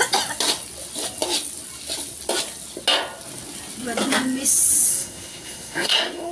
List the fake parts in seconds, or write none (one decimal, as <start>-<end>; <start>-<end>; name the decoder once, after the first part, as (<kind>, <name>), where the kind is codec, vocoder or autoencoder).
4.9-6.3 (codec, SNAC)